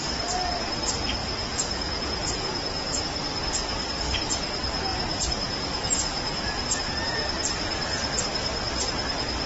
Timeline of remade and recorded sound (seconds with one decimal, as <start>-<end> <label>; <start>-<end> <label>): 0.0-1.2 recorded; 1.2-3.0 remade; 3.0-4.9 recorded; 4.9-6.9 remade; 6.9-9.5 recorded